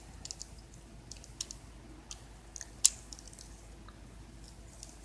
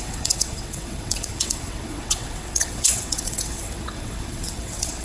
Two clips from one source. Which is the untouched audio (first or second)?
first